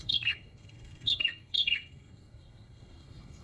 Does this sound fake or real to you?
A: fake